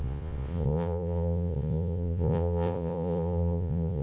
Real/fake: fake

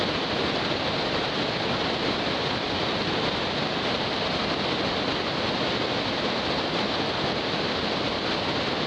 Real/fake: real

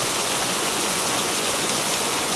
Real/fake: fake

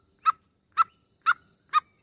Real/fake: real